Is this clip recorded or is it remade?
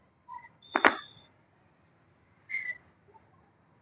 recorded